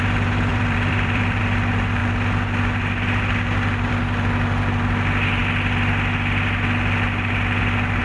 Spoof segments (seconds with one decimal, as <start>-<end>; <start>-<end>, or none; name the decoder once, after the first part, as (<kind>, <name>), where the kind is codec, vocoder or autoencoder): 0.5-1.4 (vocoder, BigVGAN v2)